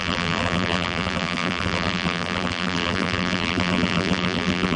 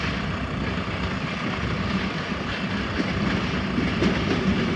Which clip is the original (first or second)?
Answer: second